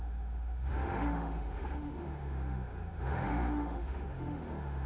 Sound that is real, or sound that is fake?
fake